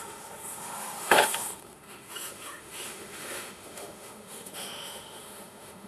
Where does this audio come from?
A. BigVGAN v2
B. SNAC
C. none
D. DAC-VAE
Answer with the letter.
D